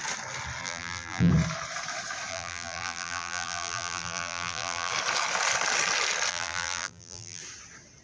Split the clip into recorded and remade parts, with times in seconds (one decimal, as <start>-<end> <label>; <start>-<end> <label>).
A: 0.0-0.6 recorded; 0.6-1.3 remade; 1.3-2.3 recorded; 2.3-4.9 remade; 4.9-6.3 recorded; 6.3-7.4 remade; 7.4-8.0 recorded